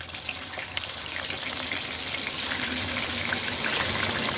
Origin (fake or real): real